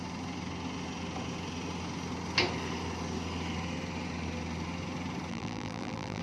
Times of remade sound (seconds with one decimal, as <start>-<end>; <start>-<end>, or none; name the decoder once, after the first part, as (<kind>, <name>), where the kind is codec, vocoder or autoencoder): 5.3-6.2 (vocoder, BigVGAN v2)